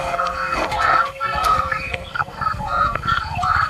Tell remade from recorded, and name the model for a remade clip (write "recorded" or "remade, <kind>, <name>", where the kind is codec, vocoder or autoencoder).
remade, codec, SNAC